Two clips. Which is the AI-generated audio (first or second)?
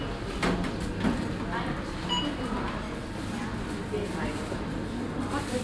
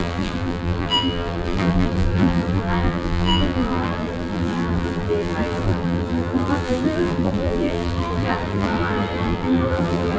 second